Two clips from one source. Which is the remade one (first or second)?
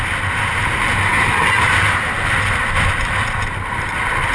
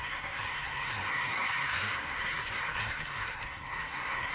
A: second